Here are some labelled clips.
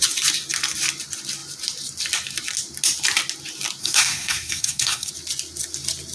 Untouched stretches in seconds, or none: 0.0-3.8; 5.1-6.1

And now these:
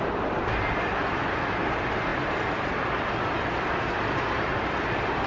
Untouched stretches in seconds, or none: 0.0-5.3

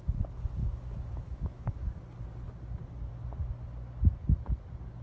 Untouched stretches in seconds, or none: 0.0-0.6; 2.0-5.0

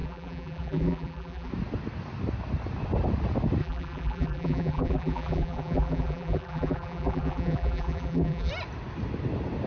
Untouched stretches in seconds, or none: 1.5-3.6; 8.5-9.7